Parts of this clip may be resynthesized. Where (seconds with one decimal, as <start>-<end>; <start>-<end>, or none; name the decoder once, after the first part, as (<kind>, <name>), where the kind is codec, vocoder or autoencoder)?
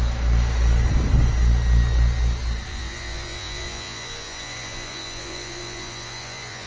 2.7-6.7 (vocoder, Vocos)